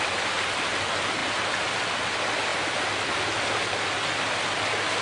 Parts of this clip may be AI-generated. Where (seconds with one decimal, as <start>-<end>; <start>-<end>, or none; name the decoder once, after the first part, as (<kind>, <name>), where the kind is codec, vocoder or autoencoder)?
none